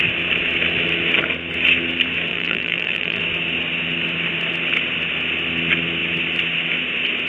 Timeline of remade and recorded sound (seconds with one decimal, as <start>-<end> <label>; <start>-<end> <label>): 0.0-2.3 recorded; 2.3-3.2 remade; 3.2-7.3 recorded